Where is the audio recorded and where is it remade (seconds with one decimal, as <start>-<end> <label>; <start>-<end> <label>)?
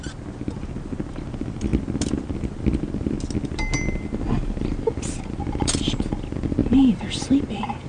0.0-7.9 recorded